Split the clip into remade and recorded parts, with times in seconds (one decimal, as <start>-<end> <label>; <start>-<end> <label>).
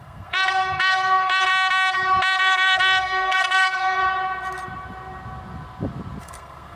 0.0-1.5 remade; 1.5-2.4 recorded; 2.4-4.0 remade; 4.0-6.2 recorded; 6.2-6.8 remade